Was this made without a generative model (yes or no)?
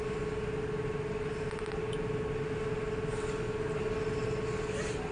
yes